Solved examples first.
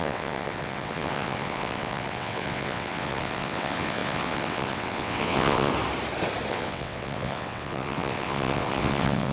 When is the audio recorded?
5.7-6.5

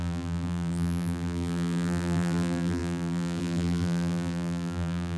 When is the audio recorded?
none

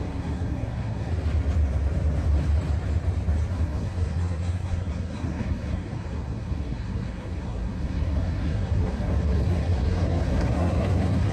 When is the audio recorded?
1.1-3.5

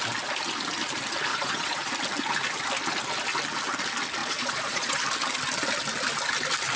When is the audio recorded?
0.0-1.3; 1.9-4.2; 5.0-6.8